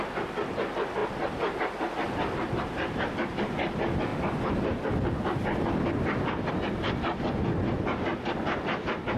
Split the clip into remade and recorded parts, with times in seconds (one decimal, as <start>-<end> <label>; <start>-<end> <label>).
0.0-9.2 recorded